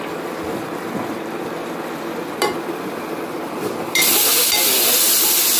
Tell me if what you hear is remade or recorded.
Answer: remade